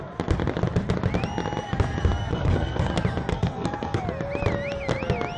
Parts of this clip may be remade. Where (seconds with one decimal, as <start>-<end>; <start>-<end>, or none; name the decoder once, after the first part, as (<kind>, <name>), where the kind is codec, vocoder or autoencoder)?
2.3-2.9 (codec, SNAC); 3.3-4.0